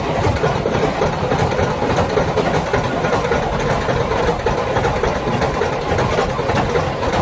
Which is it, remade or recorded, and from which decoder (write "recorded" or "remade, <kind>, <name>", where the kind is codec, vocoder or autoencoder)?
recorded